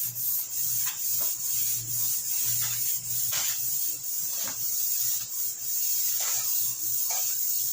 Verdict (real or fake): real